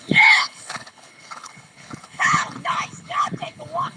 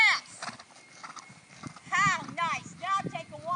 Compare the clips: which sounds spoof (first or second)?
first